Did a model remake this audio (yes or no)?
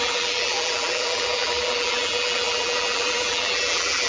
yes